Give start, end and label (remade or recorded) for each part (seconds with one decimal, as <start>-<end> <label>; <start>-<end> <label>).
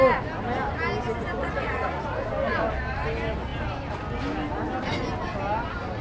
0.0-1.4 recorded; 1.4-2.0 remade; 2.0-6.0 recorded